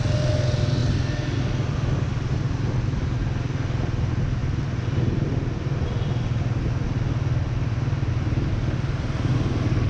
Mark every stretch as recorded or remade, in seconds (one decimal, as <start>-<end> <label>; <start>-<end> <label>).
0.0-9.9 recorded